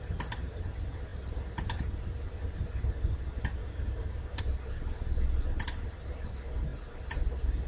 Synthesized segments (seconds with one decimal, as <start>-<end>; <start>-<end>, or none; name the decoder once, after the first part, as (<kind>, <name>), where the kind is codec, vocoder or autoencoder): 3.6-4.4 (codec, DAC)

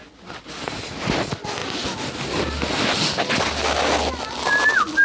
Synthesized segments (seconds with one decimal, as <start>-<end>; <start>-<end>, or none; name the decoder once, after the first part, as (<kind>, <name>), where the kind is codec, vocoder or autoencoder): none

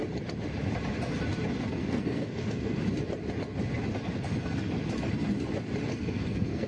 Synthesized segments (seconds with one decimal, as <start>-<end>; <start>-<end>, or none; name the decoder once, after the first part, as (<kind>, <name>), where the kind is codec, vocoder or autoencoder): 1.8-2.8 (codec, SNAC); 5.9-6.7